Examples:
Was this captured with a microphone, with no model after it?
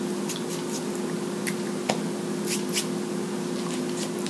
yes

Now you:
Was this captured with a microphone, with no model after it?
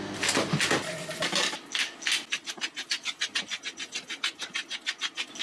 yes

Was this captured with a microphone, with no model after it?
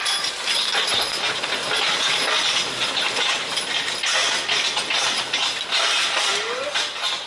yes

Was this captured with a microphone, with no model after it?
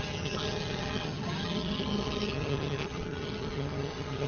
no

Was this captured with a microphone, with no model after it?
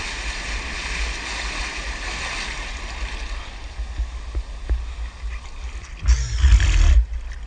yes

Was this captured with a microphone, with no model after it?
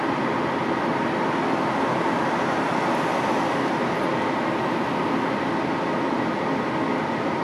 yes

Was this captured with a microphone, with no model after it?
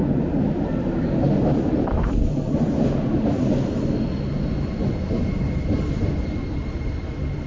yes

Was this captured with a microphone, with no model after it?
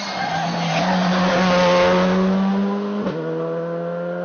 yes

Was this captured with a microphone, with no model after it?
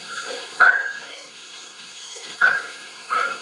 no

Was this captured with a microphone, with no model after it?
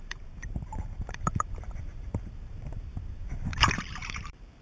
no